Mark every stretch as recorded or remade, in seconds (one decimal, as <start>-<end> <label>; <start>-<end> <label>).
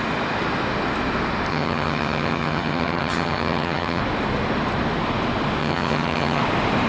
0.0-1.5 recorded; 1.5-4.0 remade; 4.0-5.6 recorded; 5.6-6.4 remade; 6.4-6.9 recorded